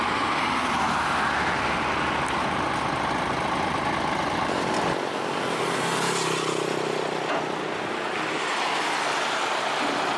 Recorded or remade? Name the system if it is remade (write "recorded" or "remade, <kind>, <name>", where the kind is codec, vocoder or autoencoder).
recorded